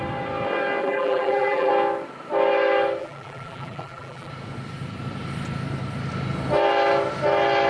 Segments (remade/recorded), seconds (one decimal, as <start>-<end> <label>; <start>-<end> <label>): 0.0-0.8 recorded; 0.8-1.7 remade; 1.7-3.0 recorded; 3.0-4.3 remade; 4.3-7.7 recorded